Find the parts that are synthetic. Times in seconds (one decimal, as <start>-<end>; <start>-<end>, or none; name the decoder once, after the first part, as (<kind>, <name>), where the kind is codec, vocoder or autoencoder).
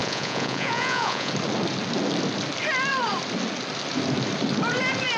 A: 0.0-1.3 (vocoder, Vocos)